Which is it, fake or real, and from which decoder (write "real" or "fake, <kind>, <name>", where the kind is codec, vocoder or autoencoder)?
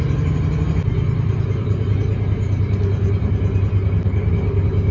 real